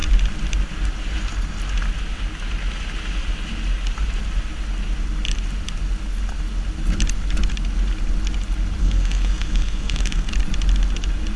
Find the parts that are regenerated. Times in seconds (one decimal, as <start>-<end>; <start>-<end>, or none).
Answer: 8.8-10.3